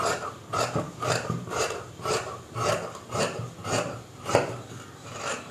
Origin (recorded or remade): remade